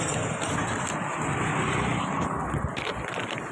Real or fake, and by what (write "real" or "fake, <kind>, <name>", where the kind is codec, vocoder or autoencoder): real